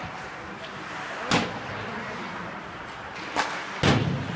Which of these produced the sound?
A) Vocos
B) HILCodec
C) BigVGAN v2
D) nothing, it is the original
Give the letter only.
D